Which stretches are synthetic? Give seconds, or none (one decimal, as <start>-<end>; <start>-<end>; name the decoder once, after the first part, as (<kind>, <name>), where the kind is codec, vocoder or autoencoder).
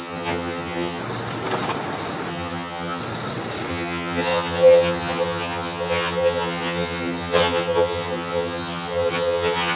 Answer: 0.0-1.0 (vocoder, HiFi-GAN); 2.3-3.0; 3.7-9.8